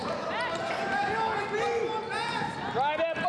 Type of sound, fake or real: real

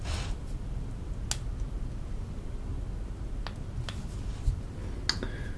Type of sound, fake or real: real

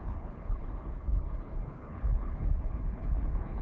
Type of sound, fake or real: fake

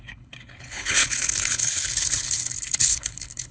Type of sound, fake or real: fake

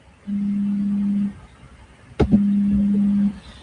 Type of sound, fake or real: real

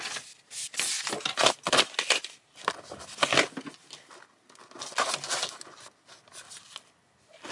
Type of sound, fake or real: real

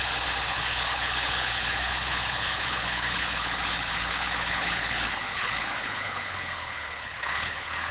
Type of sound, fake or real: fake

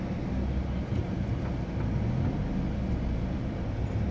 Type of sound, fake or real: real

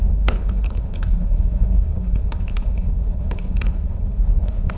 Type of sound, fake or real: fake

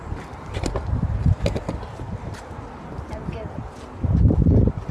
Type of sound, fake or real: real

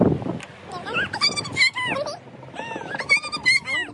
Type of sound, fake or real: real